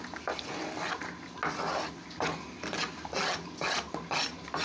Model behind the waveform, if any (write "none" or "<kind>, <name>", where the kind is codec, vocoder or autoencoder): none